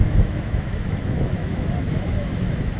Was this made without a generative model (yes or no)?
no